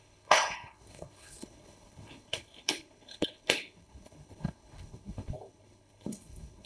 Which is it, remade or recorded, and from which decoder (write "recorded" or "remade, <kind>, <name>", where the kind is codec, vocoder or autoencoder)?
remade, codec, HILCodec